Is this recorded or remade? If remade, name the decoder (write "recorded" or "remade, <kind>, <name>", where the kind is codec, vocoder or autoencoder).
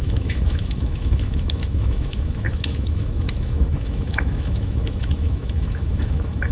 remade, autoencoder, DAC-VAE